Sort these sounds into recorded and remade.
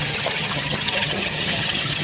remade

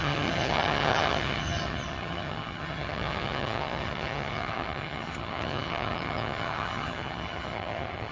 remade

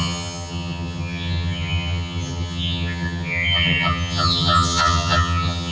remade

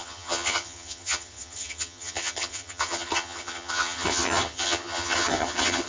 remade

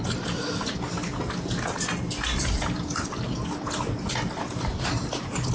recorded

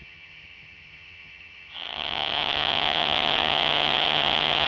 remade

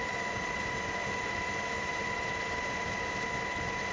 recorded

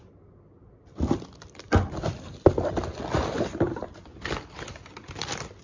recorded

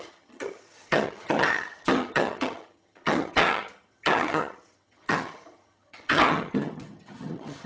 remade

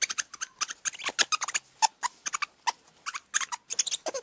recorded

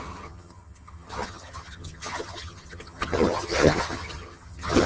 remade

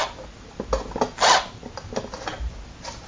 recorded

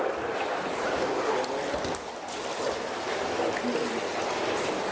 recorded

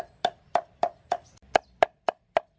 recorded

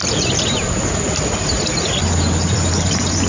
recorded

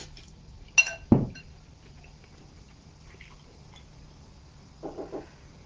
recorded